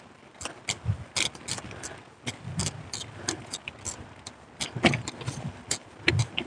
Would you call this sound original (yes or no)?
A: yes